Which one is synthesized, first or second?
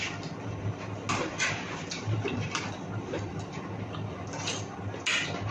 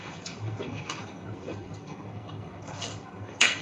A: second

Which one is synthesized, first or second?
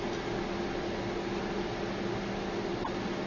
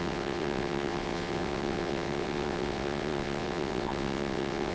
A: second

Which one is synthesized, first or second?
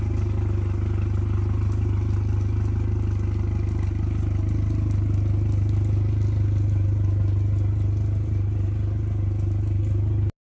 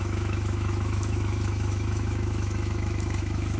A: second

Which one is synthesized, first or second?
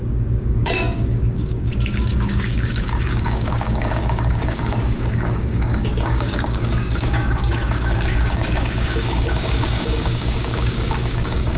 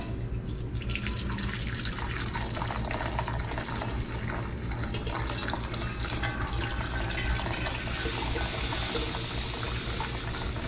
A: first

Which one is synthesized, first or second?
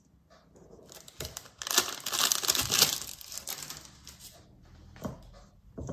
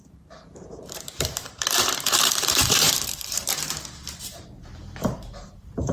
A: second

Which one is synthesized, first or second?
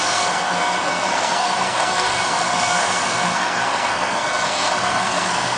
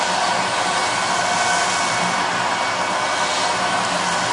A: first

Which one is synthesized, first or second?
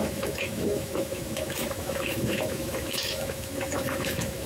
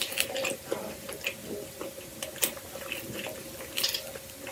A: first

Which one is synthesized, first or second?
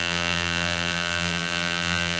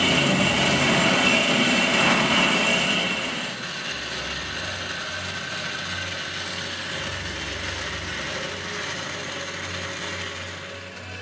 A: first